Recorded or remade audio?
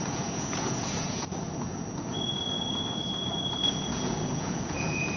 remade